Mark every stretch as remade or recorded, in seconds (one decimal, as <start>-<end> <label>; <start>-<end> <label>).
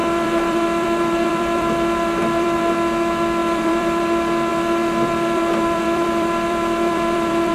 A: 0.0-2.6 remade; 2.6-3.4 recorded; 3.4-4.0 remade; 4.0-4.5 recorded; 4.5-7.5 remade